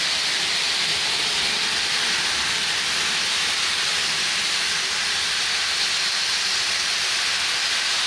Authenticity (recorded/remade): recorded